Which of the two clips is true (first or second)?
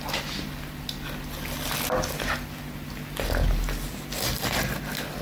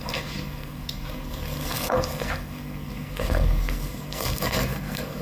first